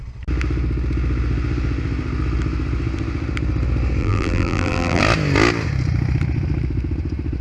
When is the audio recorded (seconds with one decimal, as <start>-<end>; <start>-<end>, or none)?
0.0-4.0; 5.0-7.4